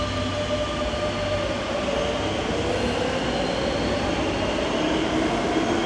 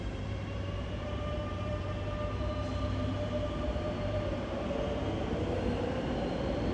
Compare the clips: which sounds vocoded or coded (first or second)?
second